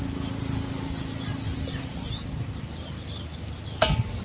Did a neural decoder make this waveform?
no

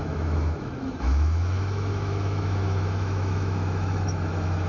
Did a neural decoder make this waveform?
yes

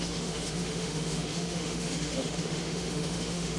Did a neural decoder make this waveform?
yes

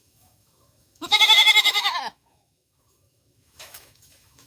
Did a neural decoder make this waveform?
yes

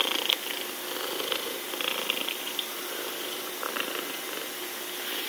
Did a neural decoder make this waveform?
no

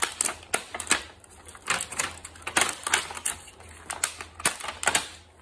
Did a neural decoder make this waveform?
no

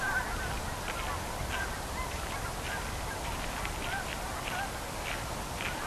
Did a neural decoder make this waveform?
no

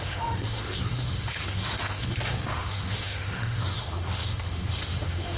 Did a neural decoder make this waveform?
yes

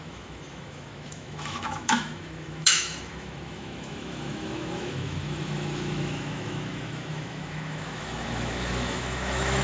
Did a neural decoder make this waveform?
yes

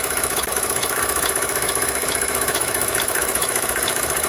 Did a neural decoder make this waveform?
yes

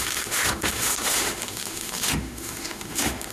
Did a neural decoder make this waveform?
yes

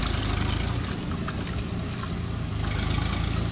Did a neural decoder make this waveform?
no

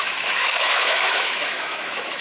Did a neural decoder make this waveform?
yes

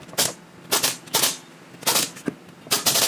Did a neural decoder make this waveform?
no